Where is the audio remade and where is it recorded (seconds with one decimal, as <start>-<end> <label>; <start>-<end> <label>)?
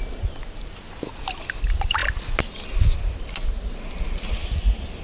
0.0-5.0 recorded